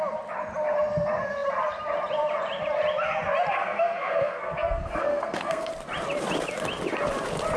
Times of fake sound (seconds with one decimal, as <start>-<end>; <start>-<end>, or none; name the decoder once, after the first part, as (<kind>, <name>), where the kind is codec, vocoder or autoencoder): 3.5-5.7 (codec, SNAC)